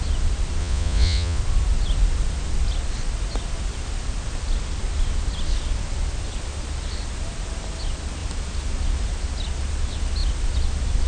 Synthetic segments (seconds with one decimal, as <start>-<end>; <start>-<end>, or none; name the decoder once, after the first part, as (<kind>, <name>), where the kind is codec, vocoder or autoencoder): 0.6-1.4 (vocoder, Vocos)